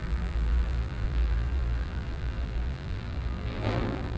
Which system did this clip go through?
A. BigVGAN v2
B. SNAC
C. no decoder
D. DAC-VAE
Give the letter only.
A